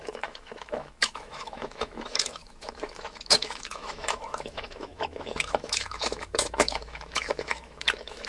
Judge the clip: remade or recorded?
remade